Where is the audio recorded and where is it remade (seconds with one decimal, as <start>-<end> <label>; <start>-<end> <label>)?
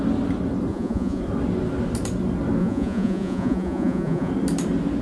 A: 0.0-0.7 recorded; 0.7-1.2 remade; 1.2-2.6 recorded; 2.6-4.3 remade; 4.3-5.0 recorded